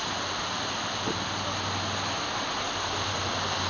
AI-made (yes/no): yes